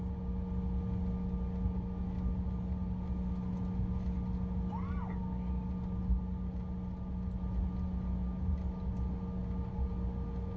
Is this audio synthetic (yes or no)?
no